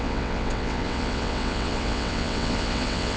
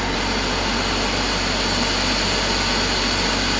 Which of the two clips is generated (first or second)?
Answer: first